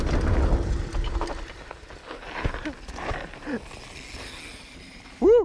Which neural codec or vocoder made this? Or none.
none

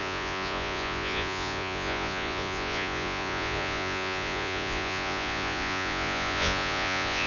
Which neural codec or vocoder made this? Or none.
vocoder, Vocos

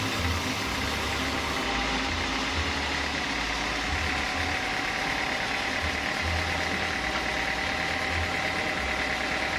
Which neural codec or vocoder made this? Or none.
none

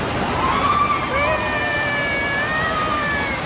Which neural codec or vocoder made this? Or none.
none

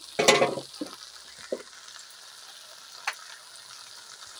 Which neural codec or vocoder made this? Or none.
none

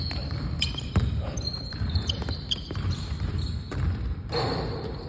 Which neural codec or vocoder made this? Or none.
vocoder, BigVGAN v2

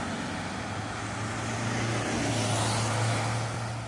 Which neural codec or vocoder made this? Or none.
none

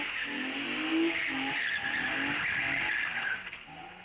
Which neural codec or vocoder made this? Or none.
none